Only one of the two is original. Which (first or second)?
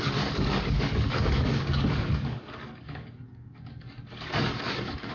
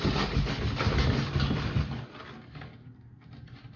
second